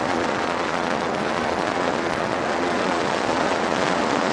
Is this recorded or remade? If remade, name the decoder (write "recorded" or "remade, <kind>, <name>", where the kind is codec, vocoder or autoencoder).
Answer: remade, vocoder, Vocos